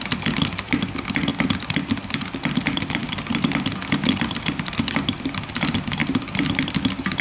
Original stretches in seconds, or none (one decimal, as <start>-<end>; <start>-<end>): 0.0-7.2

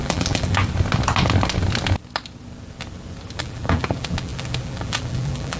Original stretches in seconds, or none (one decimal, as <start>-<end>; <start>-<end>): 0.6-3.4

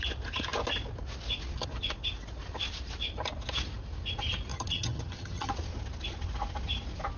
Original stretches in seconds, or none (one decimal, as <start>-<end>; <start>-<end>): 0.0-4.5; 5.5-7.2